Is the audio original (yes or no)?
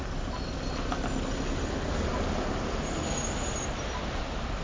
yes